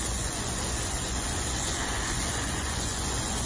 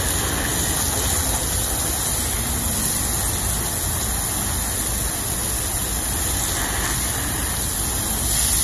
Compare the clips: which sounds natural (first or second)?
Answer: second